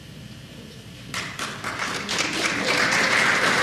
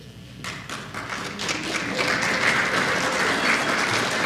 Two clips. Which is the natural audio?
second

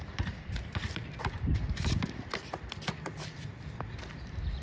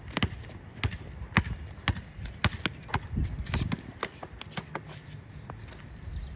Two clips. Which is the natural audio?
second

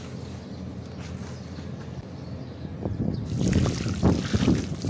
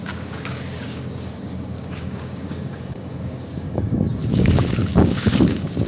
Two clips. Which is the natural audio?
first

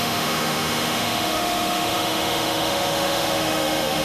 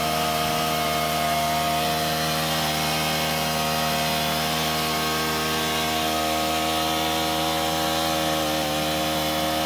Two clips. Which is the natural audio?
second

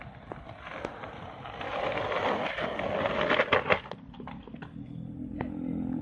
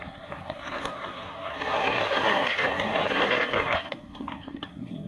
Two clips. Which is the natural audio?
first